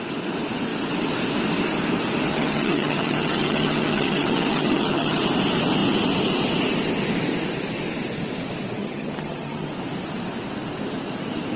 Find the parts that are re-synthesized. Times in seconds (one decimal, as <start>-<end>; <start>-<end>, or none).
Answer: 2.3-5.2; 8.8-9.7